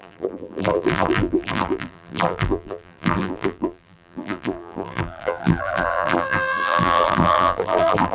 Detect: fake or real fake